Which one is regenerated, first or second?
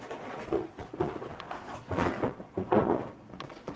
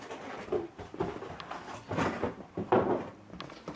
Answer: first